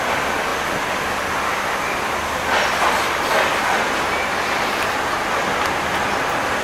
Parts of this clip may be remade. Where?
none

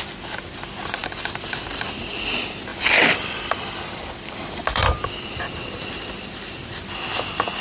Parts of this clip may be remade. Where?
1.0-2.1; 2.7-6.9

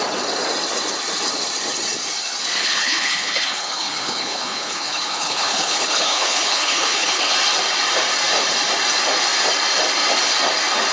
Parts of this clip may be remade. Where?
2.6-7.2

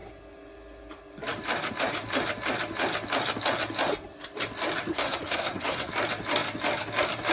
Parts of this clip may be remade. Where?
4.9-5.9